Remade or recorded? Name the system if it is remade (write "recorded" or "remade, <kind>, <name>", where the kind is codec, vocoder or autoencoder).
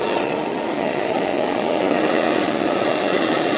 remade, vocoder, Vocos